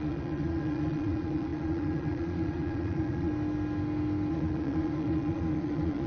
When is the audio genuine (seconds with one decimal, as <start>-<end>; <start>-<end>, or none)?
3.3-4.3